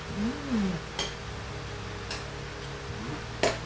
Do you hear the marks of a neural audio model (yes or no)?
no